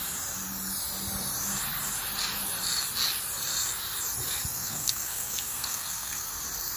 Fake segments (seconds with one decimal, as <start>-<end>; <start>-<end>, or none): 4.5-6.3